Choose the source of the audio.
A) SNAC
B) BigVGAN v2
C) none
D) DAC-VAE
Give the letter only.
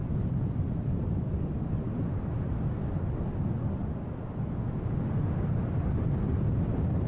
C